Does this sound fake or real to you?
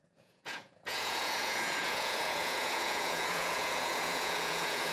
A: fake